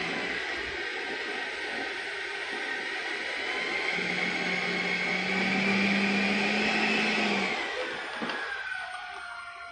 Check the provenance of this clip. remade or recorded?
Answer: recorded